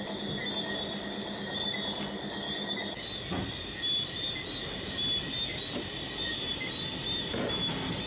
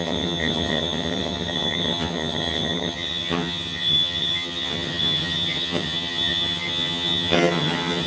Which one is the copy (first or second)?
second